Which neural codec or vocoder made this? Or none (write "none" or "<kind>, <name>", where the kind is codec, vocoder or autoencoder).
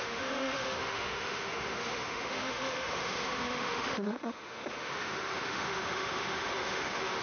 autoencoder, DAC-VAE